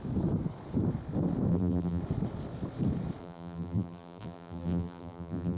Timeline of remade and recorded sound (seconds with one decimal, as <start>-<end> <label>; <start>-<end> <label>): 0.0-1.5 recorded; 1.5-2.0 remade; 2.0-3.2 recorded; 3.2-5.6 remade